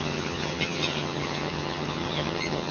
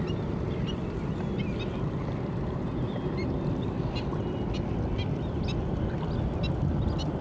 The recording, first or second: second